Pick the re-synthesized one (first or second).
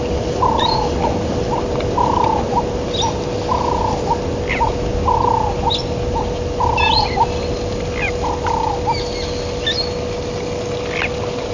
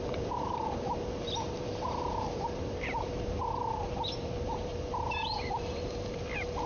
second